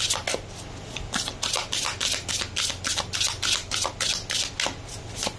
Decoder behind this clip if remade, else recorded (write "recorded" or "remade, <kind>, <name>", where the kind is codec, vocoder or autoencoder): recorded